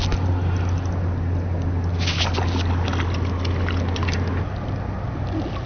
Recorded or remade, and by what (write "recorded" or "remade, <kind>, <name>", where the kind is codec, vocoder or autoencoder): recorded